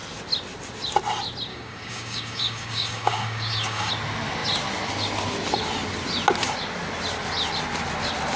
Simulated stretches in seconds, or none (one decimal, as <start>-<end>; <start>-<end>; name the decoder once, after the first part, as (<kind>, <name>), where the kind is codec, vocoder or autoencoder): 1.5-3.9 (codec, DAC)